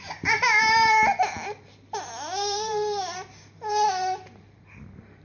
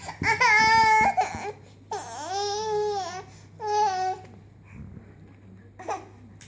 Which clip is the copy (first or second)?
first